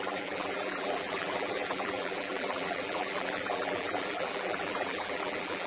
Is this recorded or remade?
remade